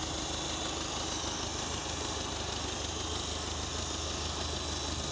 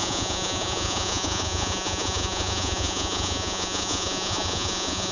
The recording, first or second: first